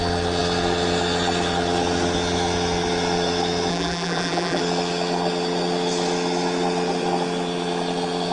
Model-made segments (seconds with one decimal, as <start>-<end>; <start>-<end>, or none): 3.7-4.6